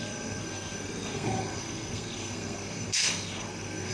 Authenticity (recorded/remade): remade